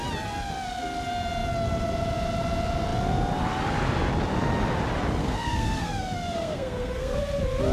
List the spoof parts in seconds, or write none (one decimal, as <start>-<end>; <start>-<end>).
5.2-7.2